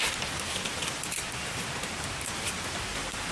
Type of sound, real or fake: real